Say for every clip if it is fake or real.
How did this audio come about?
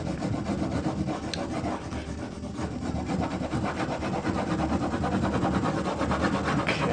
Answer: real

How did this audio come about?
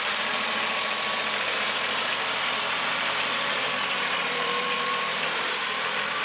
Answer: fake